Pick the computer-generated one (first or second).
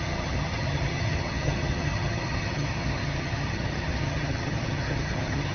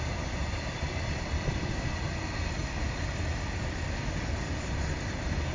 first